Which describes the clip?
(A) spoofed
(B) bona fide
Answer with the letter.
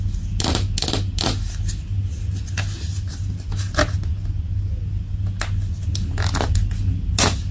B